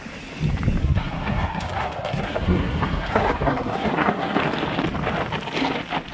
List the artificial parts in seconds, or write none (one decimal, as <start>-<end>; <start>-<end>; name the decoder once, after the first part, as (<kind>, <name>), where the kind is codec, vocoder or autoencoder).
0.8-4.4 (codec, SNAC)